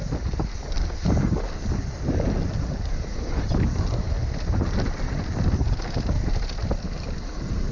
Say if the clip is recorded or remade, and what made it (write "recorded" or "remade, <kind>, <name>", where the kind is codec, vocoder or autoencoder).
recorded